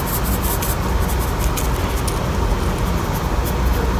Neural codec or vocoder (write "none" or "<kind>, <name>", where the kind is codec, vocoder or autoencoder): none